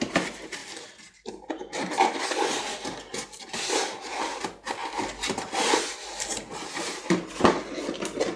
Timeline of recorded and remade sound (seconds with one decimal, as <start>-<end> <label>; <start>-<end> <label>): 0.0-0.6 recorded; 0.6-2.2 remade; 2.2-8.4 recorded